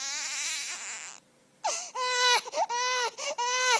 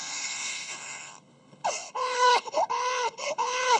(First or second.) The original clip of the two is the first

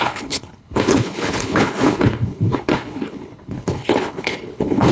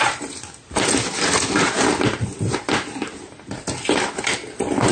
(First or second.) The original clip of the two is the second